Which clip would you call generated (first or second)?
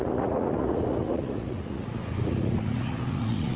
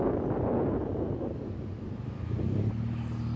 first